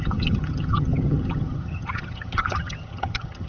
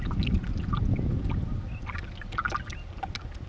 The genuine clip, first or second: second